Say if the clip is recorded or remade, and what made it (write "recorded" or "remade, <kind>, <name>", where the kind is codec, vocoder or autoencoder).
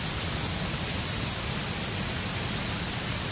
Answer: recorded